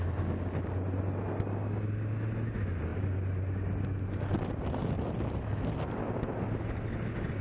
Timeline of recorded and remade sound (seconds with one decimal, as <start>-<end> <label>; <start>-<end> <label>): 0.0-7.4 recorded